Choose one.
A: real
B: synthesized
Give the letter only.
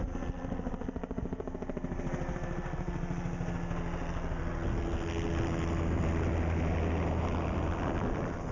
A